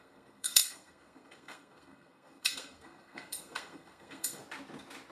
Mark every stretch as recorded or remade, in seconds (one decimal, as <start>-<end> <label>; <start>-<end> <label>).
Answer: 0.0-4.4 remade; 4.4-5.1 recorded

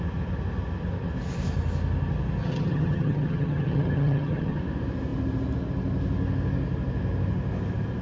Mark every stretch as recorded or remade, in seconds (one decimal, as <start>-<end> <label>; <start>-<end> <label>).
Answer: 0.0-2.4 recorded; 2.4-4.6 remade; 4.6-8.0 recorded

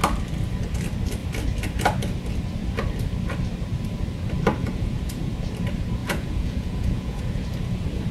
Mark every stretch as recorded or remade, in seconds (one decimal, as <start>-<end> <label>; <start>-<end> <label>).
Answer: 0.0-4.6 recorded; 4.6-5.3 remade; 5.3-6.0 recorded; 6.0-7.4 remade; 7.4-8.1 recorded

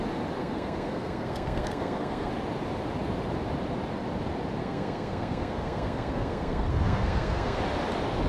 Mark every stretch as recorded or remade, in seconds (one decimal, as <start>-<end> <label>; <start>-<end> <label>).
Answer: 0.0-0.4 recorded; 0.4-2.3 remade; 2.3-4.6 recorded; 4.6-7.6 remade; 7.6-8.3 recorded

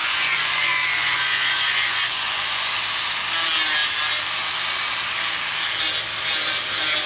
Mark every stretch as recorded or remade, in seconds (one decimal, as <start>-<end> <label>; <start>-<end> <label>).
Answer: 0.0-2.7 remade; 2.7-7.1 recorded

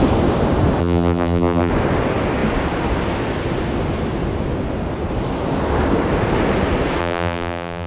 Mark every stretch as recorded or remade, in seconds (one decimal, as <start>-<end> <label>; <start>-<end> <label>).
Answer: 0.0-0.8 recorded; 0.8-1.7 remade; 1.7-7.0 recorded; 7.0-7.9 remade